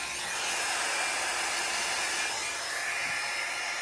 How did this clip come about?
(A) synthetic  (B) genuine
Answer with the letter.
B